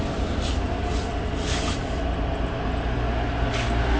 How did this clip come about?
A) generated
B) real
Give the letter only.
B